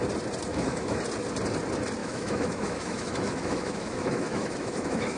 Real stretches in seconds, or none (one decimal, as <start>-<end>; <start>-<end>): 0.0-0.5; 1.0-2.0